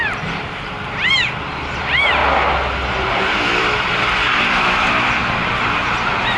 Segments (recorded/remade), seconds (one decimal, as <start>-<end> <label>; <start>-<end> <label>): 0.0-2.2 remade; 2.2-2.9 recorded; 2.9-5.2 remade; 5.2-6.4 recorded